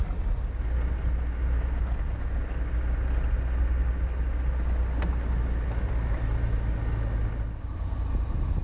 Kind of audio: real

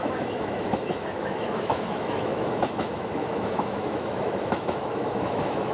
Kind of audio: fake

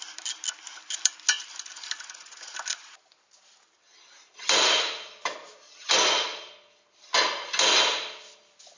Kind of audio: real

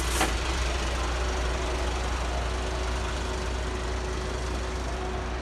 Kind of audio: real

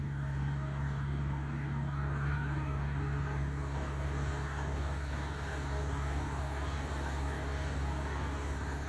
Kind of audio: fake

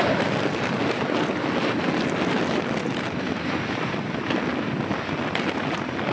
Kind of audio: real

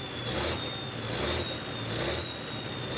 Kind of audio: real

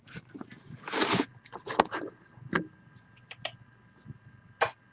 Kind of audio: real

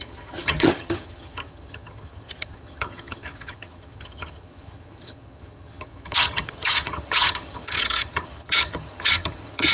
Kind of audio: fake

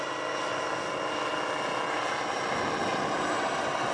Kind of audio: real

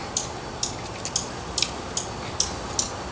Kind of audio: real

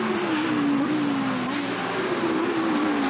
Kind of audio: real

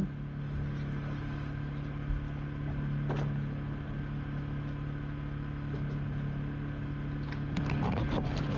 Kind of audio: real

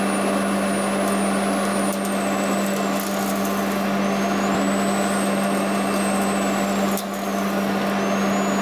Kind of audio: real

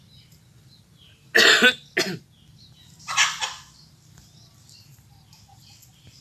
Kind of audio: real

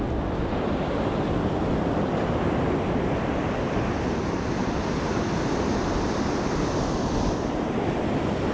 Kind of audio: real